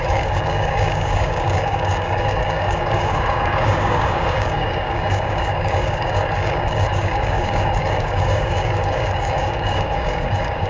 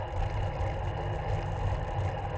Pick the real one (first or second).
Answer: second